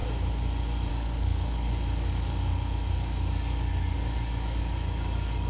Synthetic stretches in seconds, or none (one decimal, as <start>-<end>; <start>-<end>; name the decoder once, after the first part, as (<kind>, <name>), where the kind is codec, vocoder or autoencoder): 0.9-5.5 (codec, DAC)